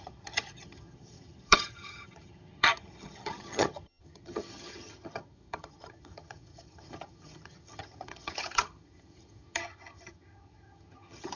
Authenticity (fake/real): fake